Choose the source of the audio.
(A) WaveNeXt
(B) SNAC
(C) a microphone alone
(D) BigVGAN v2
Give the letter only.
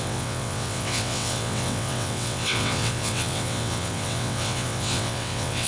A